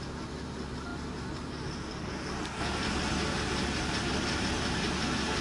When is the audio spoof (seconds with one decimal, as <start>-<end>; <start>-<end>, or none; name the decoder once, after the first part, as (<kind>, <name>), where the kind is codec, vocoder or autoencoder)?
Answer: none